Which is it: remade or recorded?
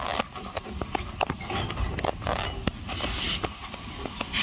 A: recorded